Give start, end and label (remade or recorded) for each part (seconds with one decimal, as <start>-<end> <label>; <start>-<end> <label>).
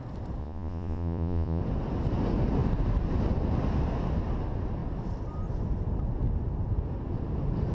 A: 0.0-0.4 recorded; 0.4-1.6 remade; 1.6-7.7 recorded